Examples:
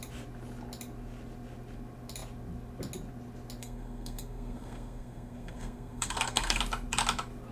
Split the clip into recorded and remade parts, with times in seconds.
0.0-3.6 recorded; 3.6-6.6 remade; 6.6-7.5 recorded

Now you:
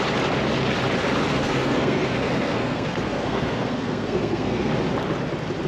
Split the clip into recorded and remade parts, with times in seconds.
0.0-1.3 recorded; 1.3-4.7 remade; 4.7-5.7 recorded

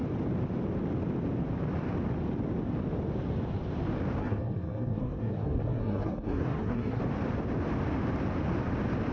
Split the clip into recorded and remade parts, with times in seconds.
0.0-4.2 recorded; 4.2-7.0 remade; 7.0-9.1 recorded

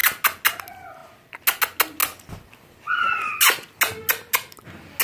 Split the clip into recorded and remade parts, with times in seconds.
0.0-5.0 recorded

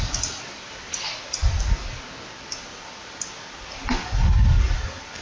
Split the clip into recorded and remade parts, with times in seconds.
0.0-5.2 recorded

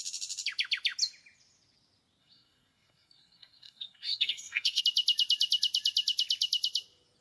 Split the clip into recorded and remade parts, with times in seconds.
0.0-2.2 recorded; 2.2-4.8 remade; 4.8-7.2 recorded

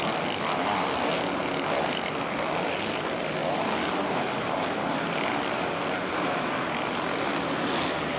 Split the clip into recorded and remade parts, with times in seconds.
0.0-8.2 recorded

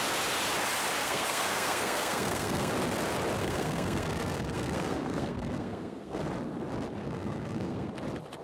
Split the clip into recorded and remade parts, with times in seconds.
0.0-1.0 recorded; 1.0-2.7 remade; 2.7-3.4 recorded; 3.4-6.2 remade; 6.2-7.0 recorded; 7.0-7.9 remade; 7.9-8.4 recorded